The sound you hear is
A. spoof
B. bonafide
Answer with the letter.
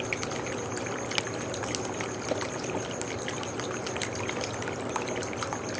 B